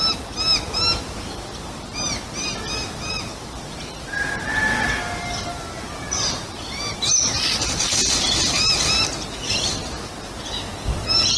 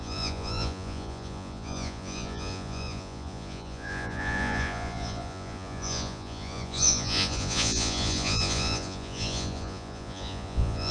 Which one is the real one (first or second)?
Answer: first